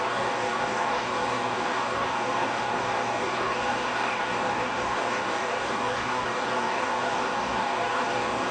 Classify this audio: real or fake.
fake